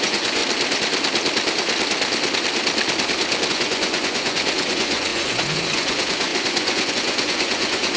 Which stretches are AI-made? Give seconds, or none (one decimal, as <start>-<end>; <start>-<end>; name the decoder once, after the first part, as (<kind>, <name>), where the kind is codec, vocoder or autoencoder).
0.0-0.4 (vocoder, Vocos); 3.5-8.0